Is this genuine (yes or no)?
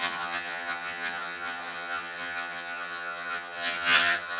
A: no